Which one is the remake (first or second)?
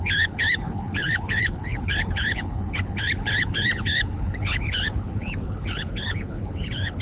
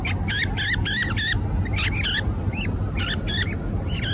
first